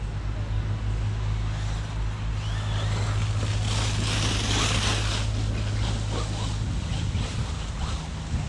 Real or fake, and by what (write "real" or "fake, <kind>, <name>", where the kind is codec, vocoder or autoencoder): real